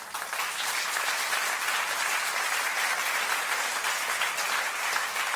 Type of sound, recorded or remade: recorded